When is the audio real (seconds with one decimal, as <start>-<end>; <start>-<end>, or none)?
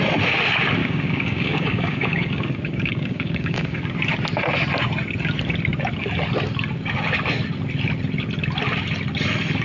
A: 0.0-0.8; 3.8-9.6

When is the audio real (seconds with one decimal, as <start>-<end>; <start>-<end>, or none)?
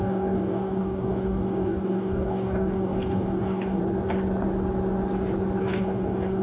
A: 3.8-5.6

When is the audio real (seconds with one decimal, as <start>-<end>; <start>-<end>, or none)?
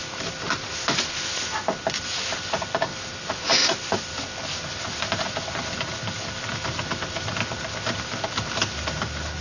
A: 0.0-9.4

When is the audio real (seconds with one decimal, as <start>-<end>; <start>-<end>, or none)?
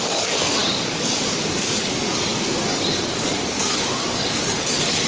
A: none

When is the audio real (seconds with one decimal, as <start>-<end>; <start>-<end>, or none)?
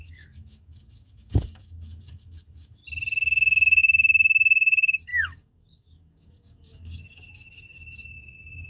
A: 2.8-3.8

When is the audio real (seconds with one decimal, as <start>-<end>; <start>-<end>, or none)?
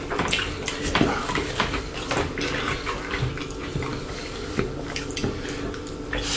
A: 0.0-1.2; 1.8-2.8; 3.3-3.9; 5.1-6.4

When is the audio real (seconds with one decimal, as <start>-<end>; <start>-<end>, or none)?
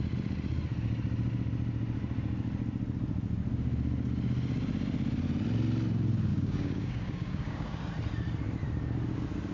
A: 0.0-6.3; 7.8-9.5